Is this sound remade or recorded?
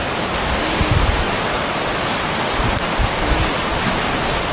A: recorded